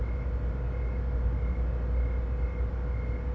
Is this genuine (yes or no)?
yes